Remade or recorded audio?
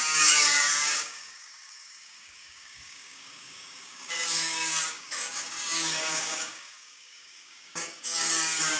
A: remade